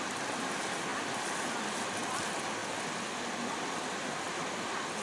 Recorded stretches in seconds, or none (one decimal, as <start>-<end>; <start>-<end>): 0.0-5.0